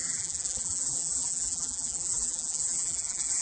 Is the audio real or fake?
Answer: fake